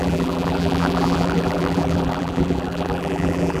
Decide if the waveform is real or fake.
fake